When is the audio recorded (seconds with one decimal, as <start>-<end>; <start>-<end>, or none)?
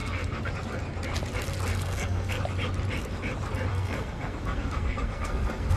0.5-1.7; 2.4-3.7